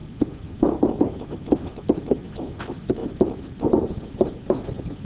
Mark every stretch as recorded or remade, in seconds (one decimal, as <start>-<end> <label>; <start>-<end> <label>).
0.0-3.0 remade; 3.0-3.7 recorded; 3.7-5.0 remade